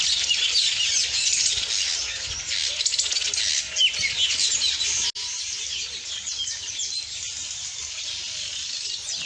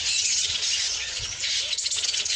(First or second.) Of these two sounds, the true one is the first